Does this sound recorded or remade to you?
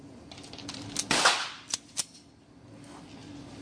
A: recorded